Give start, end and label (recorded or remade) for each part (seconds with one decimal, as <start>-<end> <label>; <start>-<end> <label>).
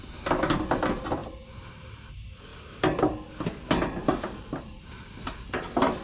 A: 0.0-6.0 recorded